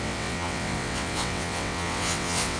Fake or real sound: fake